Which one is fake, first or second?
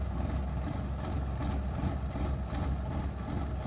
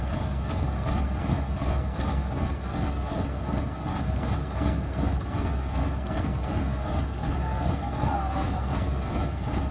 second